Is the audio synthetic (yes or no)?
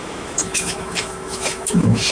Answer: yes